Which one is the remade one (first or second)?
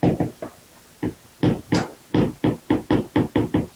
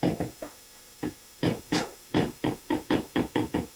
second